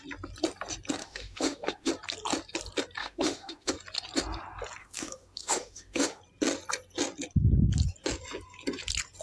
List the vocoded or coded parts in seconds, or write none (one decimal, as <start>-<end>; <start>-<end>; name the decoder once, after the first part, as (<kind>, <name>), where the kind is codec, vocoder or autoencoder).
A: 1.0-1.9 (autoencoder, DAC-VAE); 3.0-3.7; 4.8-6.2